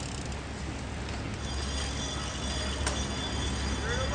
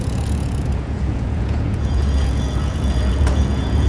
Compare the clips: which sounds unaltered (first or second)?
first